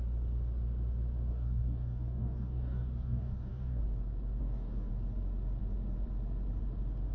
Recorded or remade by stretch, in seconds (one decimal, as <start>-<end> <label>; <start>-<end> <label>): 0.0-1.3 recorded; 1.3-3.8 remade; 3.8-4.4 recorded; 4.4-4.9 remade; 4.9-7.1 recorded